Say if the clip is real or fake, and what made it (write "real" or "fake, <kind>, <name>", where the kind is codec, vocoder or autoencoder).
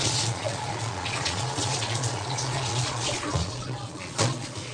fake, vocoder, Vocos